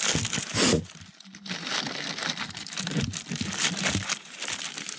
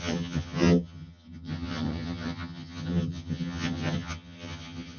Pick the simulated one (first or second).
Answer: second